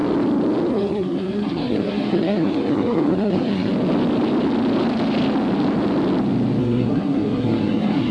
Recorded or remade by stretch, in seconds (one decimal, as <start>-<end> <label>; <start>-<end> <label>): 0.0-0.7 recorded; 0.7-3.7 remade; 3.7-6.6 recorded; 6.6-8.1 remade